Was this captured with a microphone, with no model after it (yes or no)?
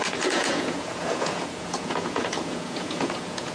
no